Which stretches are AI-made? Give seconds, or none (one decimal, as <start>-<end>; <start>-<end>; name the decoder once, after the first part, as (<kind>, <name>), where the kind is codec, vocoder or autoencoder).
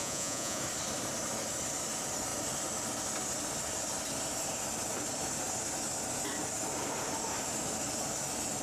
0.0-0.6 (vocoder, Vocos)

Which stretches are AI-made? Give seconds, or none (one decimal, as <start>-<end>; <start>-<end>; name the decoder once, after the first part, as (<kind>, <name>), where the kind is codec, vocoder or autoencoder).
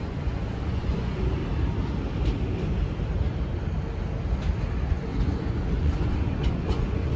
0.0-1.4 (vocoder, Vocos); 4.9-7.2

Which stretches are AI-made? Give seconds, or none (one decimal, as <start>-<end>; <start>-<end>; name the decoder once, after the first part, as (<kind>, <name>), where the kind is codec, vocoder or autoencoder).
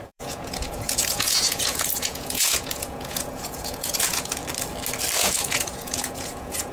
0.0-4.4 (vocoder, Vocos); 5.2-6.7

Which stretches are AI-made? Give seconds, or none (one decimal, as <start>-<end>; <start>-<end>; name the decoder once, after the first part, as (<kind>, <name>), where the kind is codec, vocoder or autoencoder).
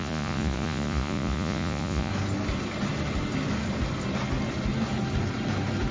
0.0-2.1 (vocoder, Vocos)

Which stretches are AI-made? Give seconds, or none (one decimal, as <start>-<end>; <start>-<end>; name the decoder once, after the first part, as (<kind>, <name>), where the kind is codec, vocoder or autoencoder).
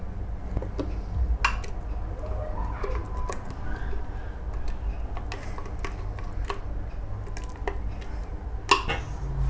none